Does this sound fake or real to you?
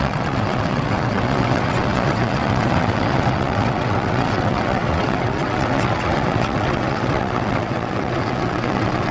fake